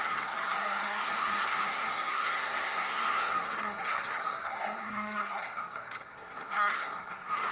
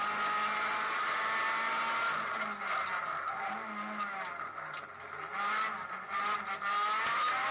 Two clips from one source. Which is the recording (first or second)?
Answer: second